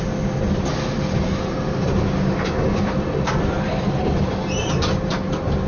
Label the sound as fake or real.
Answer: real